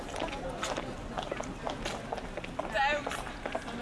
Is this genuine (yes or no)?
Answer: yes